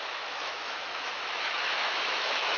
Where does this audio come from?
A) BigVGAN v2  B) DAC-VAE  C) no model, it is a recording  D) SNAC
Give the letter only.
B